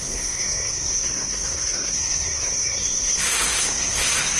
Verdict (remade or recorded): remade